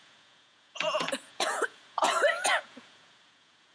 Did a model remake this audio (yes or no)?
yes